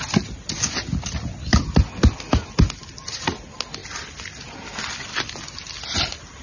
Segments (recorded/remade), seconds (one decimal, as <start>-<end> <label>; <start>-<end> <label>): 0.0-6.4 recorded